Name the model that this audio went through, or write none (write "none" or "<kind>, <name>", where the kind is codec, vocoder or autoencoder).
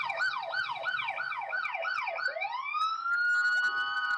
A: none